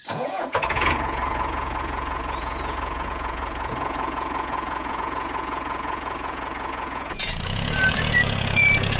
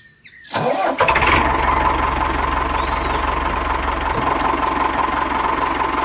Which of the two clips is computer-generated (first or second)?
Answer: first